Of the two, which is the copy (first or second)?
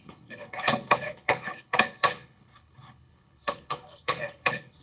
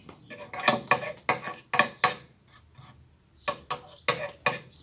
first